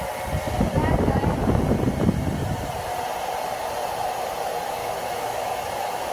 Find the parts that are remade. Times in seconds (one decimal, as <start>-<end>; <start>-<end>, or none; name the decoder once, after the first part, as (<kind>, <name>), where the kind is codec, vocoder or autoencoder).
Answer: 4.8-6.1 (autoencoder, DAC-VAE)